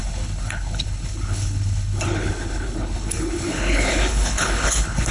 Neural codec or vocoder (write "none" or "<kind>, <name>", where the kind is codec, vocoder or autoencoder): codec, HILCodec